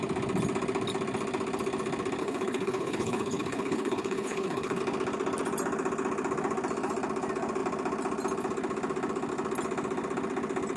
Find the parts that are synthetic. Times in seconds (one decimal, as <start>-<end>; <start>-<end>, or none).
2.2-4.8